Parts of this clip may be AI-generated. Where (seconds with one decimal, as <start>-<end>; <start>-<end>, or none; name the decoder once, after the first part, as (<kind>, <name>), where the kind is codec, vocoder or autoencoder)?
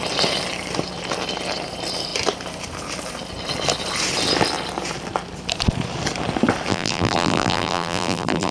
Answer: 6.7-8.5 (vocoder, BigVGAN v2)